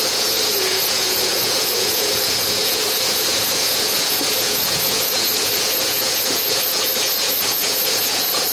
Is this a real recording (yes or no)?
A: no